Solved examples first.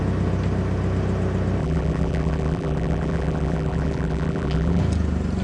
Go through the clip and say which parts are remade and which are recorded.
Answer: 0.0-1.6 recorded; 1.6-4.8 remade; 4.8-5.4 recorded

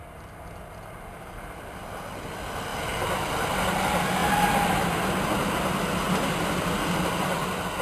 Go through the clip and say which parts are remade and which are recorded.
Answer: 0.0-7.8 recorded

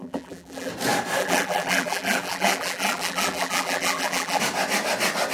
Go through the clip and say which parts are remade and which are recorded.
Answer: 0.0-0.7 remade; 0.7-1.2 recorded; 1.2-4.4 remade; 4.4-5.3 recorded

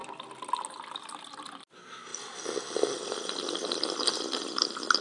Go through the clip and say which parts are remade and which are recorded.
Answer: 0.0-5.0 recorded

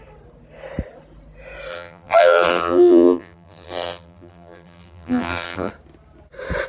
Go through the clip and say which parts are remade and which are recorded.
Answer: 0.0-1.7 recorded; 1.7-5.7 remade; 5.7-6.7 recorded

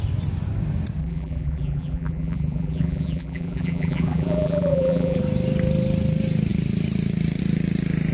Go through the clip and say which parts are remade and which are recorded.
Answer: 0.0-1.0 recorded; 1.0-5.2 remade; 5.2-8.1 recorded

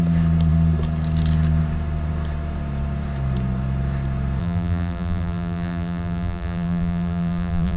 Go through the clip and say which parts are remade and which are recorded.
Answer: 0.0-4.4 recorded; 4.4-7.8 remade